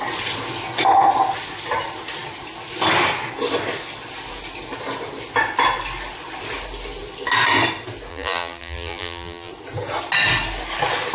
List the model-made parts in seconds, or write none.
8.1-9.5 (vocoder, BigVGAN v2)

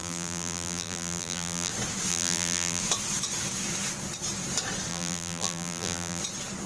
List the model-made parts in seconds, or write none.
0.0-1.7 (vocoder, BigVGAN v2); 2.1-2.8; 4.9-6.2

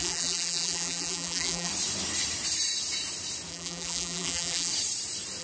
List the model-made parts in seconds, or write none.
0.0-1.7 (vocoder, BigVGAN v2); 3.5-4.7